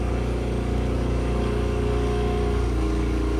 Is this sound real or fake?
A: fake